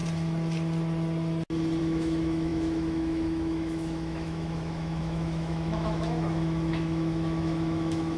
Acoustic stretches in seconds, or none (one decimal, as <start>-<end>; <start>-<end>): 0.0-1.8